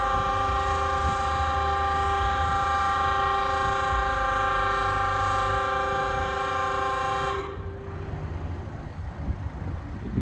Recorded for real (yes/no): yes